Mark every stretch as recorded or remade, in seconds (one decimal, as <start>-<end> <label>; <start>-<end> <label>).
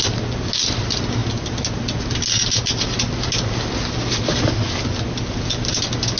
0.0-6.2 recorded